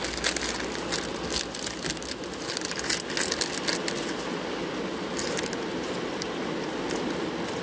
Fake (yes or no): no